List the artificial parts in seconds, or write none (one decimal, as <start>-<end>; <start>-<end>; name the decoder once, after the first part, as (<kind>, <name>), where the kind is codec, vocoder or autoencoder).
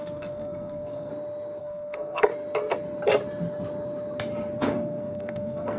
0.0-1.1 (codec, SNAC); 1.6-2.3; 4.6-5.8